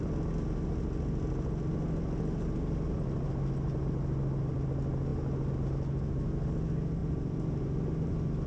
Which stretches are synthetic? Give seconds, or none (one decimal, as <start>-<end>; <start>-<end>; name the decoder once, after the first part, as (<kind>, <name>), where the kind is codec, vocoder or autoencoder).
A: none